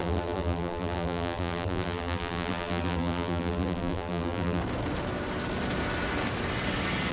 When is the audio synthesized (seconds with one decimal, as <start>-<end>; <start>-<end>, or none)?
0.0-4.6